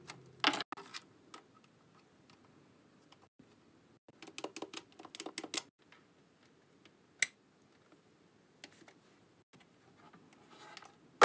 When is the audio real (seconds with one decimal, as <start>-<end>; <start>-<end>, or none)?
0.0-11.2